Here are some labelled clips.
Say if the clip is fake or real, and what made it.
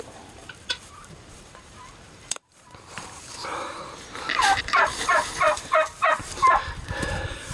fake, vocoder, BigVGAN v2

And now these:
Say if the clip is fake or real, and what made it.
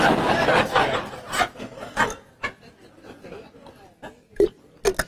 real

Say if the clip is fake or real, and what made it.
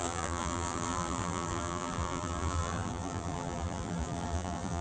fake, vocoder, BigVGAN v2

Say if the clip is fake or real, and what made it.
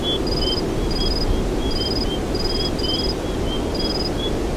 real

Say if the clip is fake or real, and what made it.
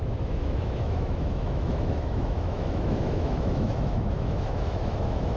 fake, autoencoder, DAC-VAE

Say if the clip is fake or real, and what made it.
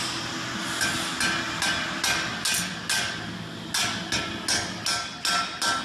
real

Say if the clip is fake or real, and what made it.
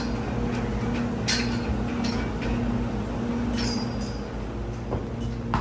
real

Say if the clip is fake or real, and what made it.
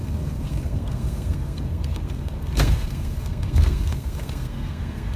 fake, codec, SNAC